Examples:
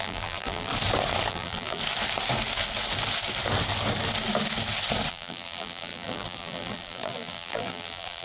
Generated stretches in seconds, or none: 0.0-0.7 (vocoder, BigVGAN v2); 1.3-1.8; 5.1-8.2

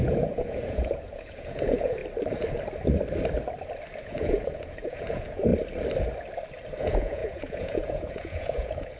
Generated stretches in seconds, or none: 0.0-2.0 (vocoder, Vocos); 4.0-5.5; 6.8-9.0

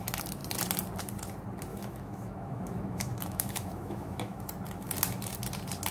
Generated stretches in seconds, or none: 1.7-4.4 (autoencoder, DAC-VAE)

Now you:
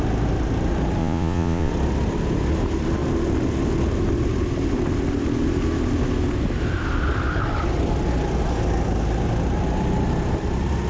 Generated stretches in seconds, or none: 1.0-1.7 (vocoder, Vocos)